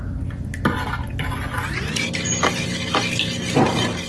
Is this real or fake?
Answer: real